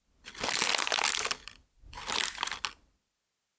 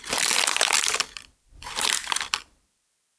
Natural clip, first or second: first